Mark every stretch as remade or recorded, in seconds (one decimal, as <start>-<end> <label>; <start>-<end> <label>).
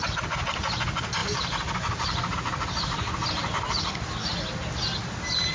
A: 0.0-1.2 recorded; 1.2-3.7 remade; 3.7-5.5 recorded